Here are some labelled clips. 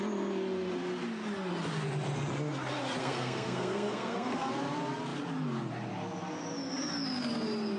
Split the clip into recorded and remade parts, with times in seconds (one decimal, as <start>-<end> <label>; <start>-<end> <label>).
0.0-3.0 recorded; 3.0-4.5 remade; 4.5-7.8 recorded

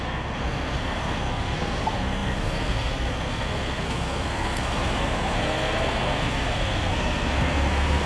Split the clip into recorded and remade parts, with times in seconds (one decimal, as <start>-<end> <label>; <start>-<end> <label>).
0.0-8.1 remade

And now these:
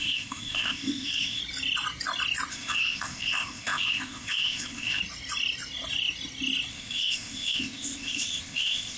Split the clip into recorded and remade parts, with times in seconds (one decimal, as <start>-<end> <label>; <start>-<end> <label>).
0.0-1.4 remade; 1.4-2.5 recorded; 2.5-5.0 remade; 5.0-6.7 recorded; 6.7-9.0 remade

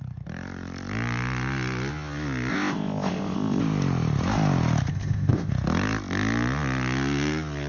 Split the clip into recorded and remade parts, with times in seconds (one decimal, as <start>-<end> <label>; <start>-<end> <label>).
0.0-2.5 recorded; 2.5-3.6 remade; 3.6-4.9 recorded; 4.9-5.5 remade; 5.5-7.7 recorded

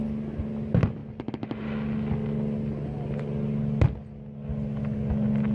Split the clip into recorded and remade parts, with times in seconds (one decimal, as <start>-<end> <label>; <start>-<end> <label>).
0.0-5.5 recorded

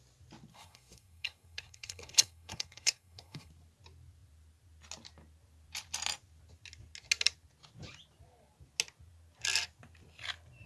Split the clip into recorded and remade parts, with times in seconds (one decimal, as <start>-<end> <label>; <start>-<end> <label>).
0.0-0.5 recorded; 0.5-3.5 remade; 3.5-10.7 recorded